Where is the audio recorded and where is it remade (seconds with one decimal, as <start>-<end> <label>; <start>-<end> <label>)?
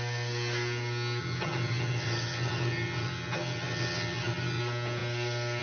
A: 0.0-1.2 recorded; 1.2-4.6 remade; 4.6-5.6 recorded